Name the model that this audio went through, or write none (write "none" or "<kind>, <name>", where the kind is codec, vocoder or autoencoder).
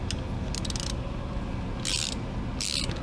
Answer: none